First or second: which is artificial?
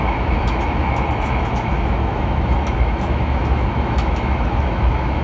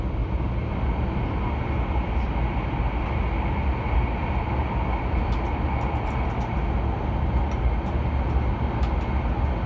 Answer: first